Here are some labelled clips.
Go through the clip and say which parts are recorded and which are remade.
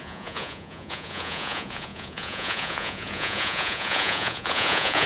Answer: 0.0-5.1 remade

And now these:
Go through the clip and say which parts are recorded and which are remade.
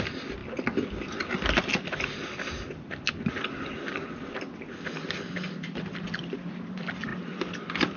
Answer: 0.0-8.0 recorded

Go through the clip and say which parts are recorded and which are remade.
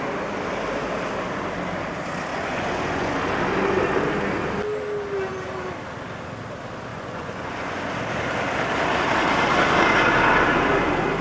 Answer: 0.0-2.3 recorded; 2.3-3.2 remade; 3.2-6.9 recorded; 6.9-7.8 remade; 7.8-11.2 recorded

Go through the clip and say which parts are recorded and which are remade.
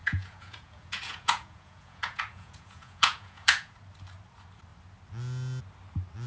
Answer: 0.0-3.7 remade; 3.7-6.3 recorded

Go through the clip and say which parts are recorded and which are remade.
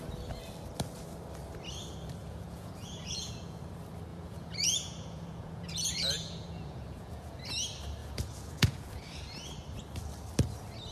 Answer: 0.0-2.2 recorded; 2.2-3.6 remade; 3.6-4.1 recorded; 4.1-7.4 remade; 7.4-8.0 recorded; 8.0-9.2 remade; 9.2-10.9 recorded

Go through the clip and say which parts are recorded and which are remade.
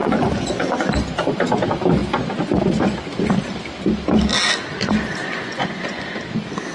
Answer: 0.0-0.9 remade; 0.9-5.2 recorded; 5.2-6.2 remade; 6.2-6.7 recorded